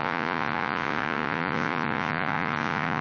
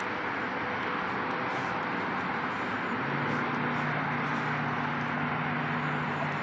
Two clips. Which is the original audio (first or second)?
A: second